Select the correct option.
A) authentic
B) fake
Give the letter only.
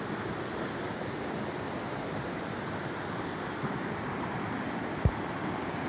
A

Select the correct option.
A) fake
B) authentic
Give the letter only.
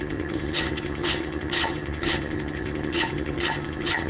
A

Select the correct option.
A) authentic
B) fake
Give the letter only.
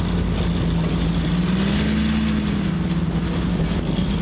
A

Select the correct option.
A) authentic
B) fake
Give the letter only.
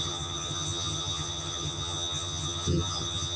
B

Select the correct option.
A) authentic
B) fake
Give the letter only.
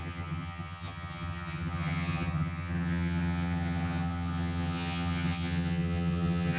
B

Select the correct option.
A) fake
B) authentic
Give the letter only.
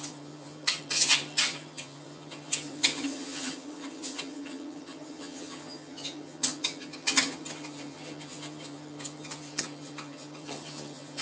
A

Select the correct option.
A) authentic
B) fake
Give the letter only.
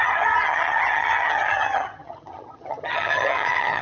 B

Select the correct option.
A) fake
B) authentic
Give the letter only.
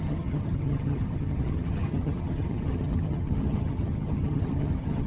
A